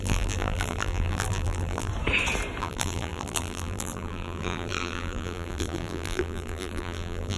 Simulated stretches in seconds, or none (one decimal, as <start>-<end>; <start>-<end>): 0.0-1.9; 2.6-7.4